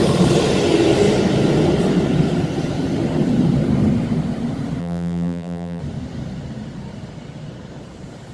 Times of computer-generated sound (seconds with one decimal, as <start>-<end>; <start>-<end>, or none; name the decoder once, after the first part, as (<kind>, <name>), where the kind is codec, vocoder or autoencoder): 4.8-5.8 (vocoder, BigVGAN v2)